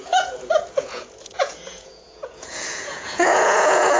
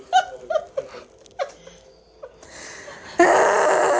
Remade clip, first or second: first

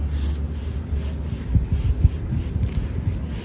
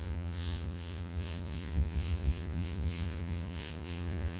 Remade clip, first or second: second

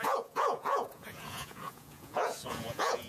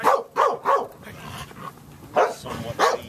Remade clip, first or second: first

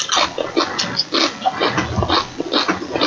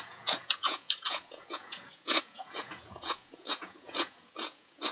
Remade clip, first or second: second